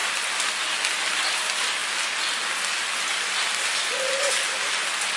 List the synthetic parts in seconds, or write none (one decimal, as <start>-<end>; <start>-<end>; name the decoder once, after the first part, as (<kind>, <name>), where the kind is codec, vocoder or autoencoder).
none